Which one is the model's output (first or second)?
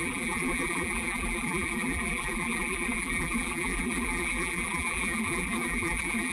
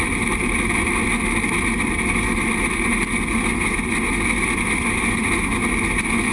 first